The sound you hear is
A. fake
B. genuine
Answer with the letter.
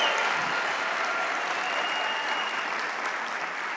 B